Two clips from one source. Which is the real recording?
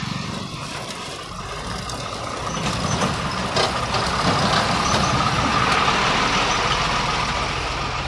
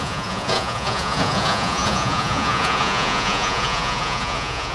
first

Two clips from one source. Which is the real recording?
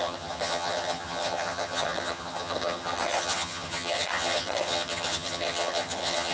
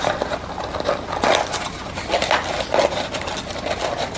second